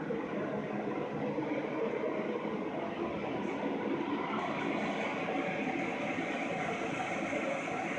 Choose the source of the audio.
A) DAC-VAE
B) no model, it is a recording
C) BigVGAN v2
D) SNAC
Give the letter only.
B